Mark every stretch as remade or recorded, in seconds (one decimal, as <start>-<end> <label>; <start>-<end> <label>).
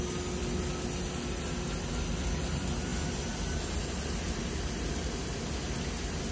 0.0-6.3 recorded